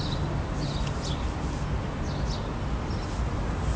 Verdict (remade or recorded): recorded